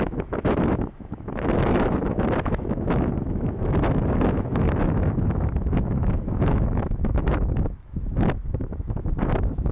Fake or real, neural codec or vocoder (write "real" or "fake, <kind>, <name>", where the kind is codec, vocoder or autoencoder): fake, autoencoder, DAC-VAE